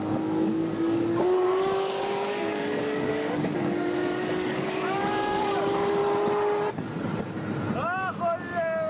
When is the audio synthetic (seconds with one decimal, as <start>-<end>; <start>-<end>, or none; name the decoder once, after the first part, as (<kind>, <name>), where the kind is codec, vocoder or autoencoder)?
0.0-6.0 (codec, DAC)